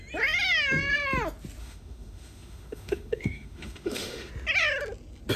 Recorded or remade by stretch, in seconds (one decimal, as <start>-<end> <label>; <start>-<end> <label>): 0.0-1.6 recorded; 1.6-4.3 remade; 4.3-5.4 recorded